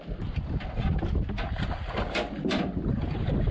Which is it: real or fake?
real